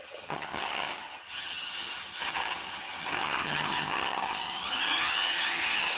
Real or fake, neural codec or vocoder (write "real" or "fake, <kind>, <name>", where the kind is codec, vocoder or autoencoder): fake, vocoder, HiFi-GAN